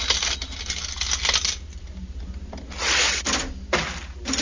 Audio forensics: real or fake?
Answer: real